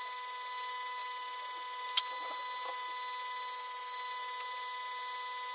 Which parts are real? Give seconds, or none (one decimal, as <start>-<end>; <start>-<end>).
0.0-5.5